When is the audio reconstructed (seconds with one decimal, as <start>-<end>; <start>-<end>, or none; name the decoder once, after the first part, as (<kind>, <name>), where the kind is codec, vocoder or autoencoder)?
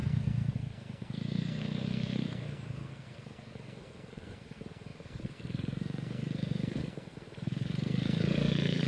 0.0-8.9 (codec, SNAC)